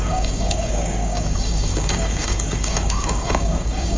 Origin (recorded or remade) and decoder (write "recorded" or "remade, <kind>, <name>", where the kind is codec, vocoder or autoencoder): remade, codec, DAC